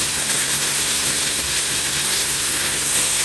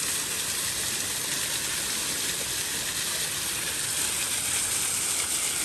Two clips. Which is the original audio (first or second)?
second